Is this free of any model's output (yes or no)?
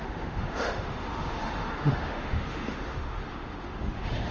no